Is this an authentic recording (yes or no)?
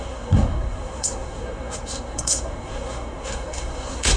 no